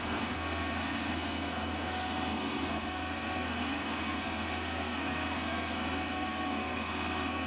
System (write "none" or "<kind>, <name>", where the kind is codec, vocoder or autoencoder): codec, SNAC